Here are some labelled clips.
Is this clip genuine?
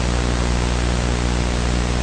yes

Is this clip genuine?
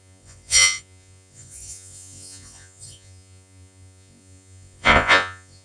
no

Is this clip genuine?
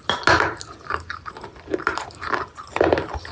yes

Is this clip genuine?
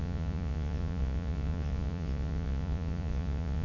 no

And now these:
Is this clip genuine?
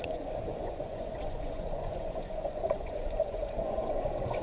no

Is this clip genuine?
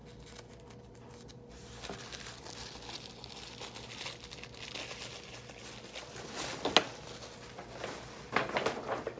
yes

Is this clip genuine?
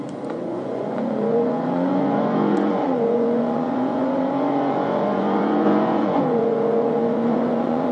no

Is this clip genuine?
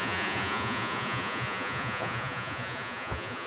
no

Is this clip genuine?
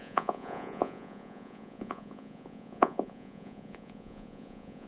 no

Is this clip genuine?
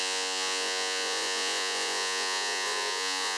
no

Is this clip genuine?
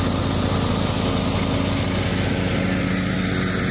yes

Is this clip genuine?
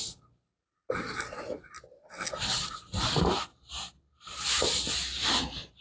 yes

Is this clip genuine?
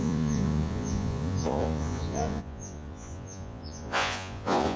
no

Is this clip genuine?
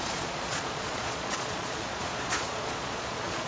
no